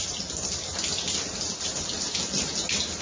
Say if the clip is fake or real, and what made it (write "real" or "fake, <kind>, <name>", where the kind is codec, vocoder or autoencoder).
real